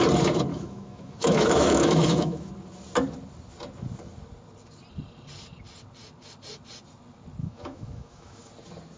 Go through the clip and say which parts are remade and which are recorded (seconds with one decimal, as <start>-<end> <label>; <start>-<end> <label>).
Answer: 0.0-0.5 recorded; 0.5-2.5 remade; 2.5-7.4 recorded; 7.4-8.5 remade; 8.5-9.0 recorded

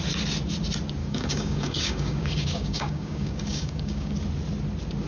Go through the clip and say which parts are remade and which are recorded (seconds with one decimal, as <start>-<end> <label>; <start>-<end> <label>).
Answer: 0.0-1.0 recorded; 1.0-4.1 remade; 4.1-5.1 recorded

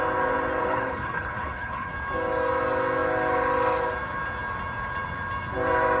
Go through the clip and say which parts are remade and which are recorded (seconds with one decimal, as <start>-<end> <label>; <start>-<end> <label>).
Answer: 0.0-0.6 recorded; 0.6-1.9 remade; 1.9-6.0 recorded

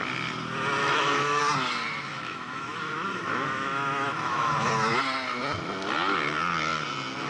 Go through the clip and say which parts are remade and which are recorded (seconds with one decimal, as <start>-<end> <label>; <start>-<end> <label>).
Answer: 0.0-0.8 recorded; 0.8-1.4 remade; 1.4-2.1 recorded; 2.1-4.7 remade; 4.7-7.3 recorded

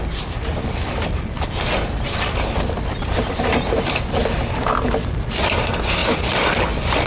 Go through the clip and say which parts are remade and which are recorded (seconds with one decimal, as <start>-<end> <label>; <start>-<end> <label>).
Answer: 0.0-7.1 recorded